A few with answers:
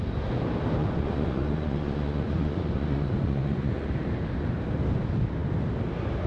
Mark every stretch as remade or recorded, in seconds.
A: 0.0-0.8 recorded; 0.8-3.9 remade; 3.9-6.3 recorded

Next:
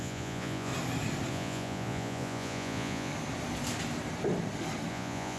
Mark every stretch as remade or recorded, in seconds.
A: 0.0-0.7 remade; 0.7-1.3 recorded; 1.3-3.1 remade; 3.1-4.9 recorded; 4.9-5.4 remade

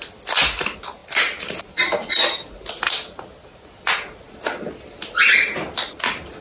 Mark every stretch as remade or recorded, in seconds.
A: 0.0-6.4 recorded

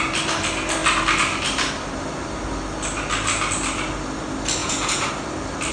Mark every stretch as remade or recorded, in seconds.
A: 0.0-4.6 recorded; 4.6-5.1 remade; 5.1-5.7 recorded

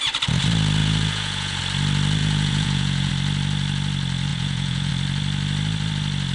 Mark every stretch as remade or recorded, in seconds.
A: 0.0-0.8 recorded; 0.8-1.6 remade; 1.6-2.2 recorded; 2.2-3.1 remade; 3.1-4.3 recorded; 4.3-4.9 remade; 4.9-6.3 recorded

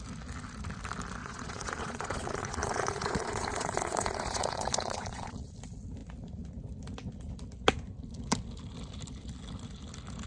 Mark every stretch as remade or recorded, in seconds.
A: 0.0-1.2 recorded; 1.2-5.5 remade; 5.5-10.3 recorded